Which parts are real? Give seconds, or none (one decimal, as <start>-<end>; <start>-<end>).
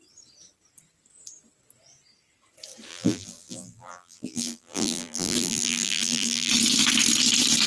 0.0-2.9; 6.5-7.7